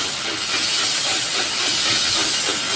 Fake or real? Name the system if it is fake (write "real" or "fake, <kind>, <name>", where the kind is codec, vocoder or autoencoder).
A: real